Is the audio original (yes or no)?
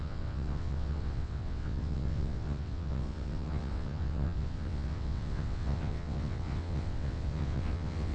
no